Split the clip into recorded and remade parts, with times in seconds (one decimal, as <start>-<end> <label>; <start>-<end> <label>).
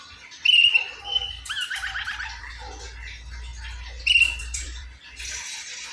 0.0-0.6 recorded; 0.6-2.5 remade; 2.5-4.4 recorded; 4.4-5.3 remade; 5.3-5.9 recorded